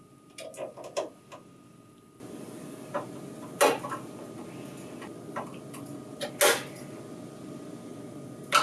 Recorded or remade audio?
recorded